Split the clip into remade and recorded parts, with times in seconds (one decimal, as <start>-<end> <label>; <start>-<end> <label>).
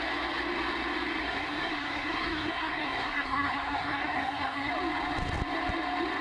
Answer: 0.0-1.2 recorded; 1.2-4.7 remade; 4.7-6.2 recorded